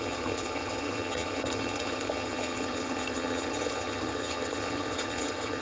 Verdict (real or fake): fake